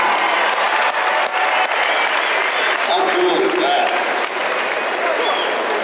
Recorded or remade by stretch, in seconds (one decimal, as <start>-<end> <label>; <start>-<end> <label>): 0.0-5.8 recorded